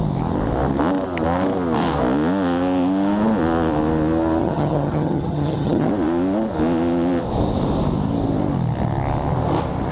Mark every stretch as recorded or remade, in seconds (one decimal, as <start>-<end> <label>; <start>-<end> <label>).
0.0-4.4 recorded; 4.4-5.9 remade; 5.9-9.9 recorded